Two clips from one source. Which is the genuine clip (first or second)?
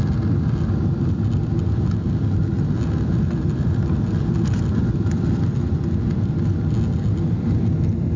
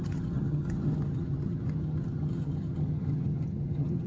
first